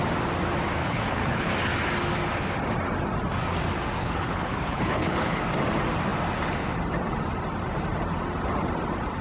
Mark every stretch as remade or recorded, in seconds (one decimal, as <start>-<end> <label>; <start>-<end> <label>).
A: 0.0-0.8 recorded; 0.8-1.5 remade; 1.5-4.0 recorded; 4.0-5.4 remade; 5.4-9.2 recorded